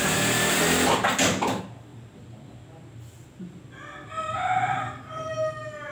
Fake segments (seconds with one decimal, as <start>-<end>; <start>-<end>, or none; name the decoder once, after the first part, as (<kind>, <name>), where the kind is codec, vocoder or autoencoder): none